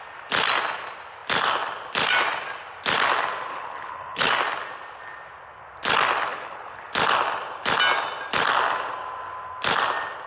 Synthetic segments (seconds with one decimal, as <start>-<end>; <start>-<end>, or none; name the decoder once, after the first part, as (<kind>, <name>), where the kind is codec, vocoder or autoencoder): 3.5-4.3 (codec, HILCodec); 6.3-6.9